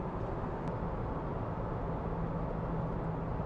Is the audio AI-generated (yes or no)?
no